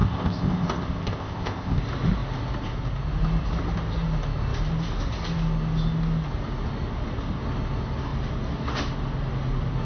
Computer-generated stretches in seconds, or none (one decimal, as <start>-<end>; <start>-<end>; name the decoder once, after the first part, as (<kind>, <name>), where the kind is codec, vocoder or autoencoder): 0.0-1.8 (codec, ZipCodec)